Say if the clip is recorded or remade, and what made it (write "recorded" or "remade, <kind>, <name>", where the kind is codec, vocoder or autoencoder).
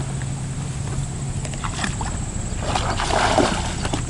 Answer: recorded